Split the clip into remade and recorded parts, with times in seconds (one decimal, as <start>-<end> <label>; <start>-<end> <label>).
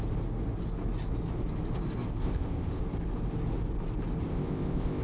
0.0-2.2 recorded; 2.2-2.8 remade; 2.8-4.3 recorded; 4.3-5.0 remade